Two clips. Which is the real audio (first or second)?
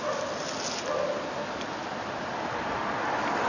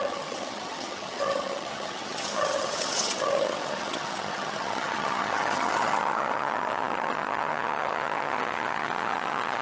first